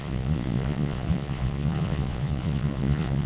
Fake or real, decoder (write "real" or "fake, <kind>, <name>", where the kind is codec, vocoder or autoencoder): fake, vocoder, Vocos